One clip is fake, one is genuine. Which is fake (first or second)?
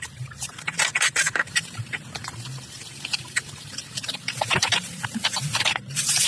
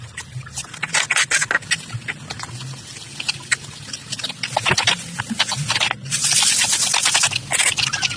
first